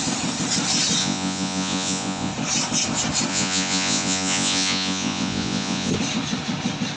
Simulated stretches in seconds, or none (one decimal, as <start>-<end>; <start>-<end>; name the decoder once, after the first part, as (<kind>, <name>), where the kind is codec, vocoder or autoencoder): 1.0-2.3 (vocoder, Vocos); 3.3-5.9